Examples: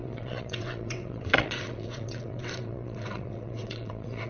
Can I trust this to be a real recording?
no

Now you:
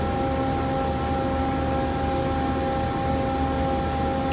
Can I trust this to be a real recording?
yes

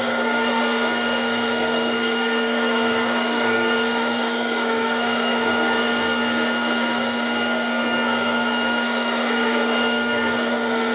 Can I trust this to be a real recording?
no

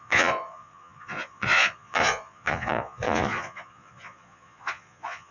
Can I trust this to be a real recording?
no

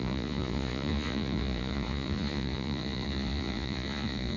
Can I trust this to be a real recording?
no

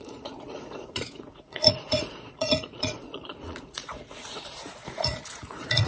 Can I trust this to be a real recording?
no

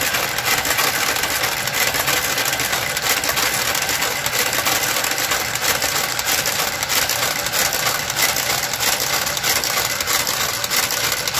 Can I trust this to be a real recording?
yes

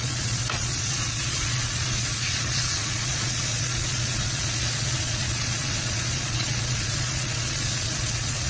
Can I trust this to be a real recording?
no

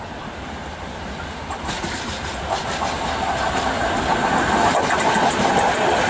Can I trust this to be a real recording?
yes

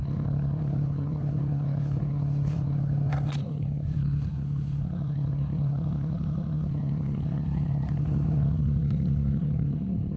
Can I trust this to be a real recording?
no